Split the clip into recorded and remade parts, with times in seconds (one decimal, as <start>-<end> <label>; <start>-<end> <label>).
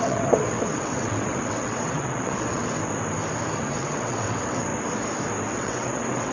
0.0-2.6 remade; 2.6-3.6 recorded; 3.6-4.7 remade; 4.7-5.5 recorded; 5.5-6.3 remade